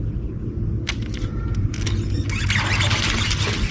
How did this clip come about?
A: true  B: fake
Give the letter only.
A